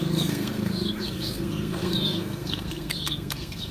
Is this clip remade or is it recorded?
remade